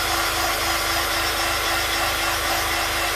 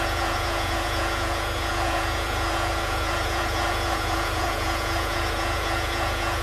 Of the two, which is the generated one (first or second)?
second